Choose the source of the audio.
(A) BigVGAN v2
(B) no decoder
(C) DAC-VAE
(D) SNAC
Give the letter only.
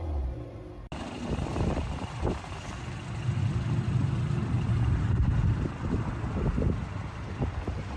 B